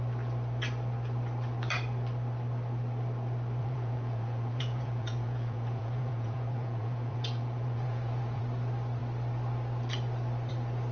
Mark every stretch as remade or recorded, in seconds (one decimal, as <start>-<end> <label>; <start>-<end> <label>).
0.0-3.6 recorded; 3.6-8.4 remade; 8.4-10.9 recorded

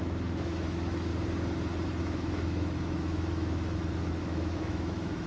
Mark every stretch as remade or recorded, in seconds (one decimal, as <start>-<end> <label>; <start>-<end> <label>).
0.0-1.1 remade; 1.1-2.0 recorded; 2.0-5.3 remade

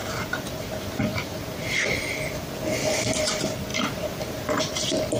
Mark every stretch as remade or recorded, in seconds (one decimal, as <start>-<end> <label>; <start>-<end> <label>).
0.0-0.7 remade; 0.7-3.7 recorded; 3.7-4.6 remade; 4.6-5.2 recorded

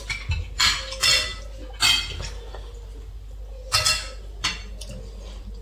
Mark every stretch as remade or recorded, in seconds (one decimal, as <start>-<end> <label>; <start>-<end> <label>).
0.0-5.6 recorded

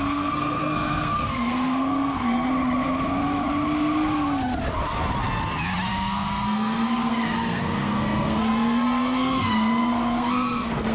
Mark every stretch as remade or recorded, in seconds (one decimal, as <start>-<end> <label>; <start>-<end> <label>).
0.0-2.5 remade; 2.5-5.9 recorded; 5.9-10.9 remade

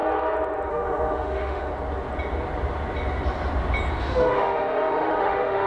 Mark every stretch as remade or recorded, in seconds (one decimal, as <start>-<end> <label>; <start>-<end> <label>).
0.0-0.7 recorded; 0.7-1.7 remade; 1.7-4.0 recorded; 4.0-5.7 remade

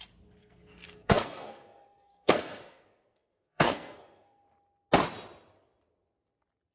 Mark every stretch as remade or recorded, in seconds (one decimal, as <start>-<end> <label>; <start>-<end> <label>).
0.0-0.4 recorded; 0.4-4.4 remade; 4.4-6.7 recorded

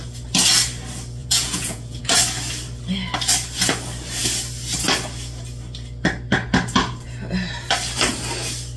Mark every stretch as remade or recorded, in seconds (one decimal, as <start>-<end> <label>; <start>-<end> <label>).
0.0-1.2 recorded; 1.2-2.0 remade; 2.0-8.8 recorded